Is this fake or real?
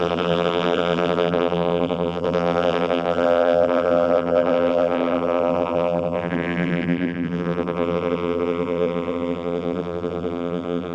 fake